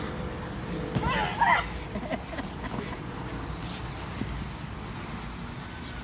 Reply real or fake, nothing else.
real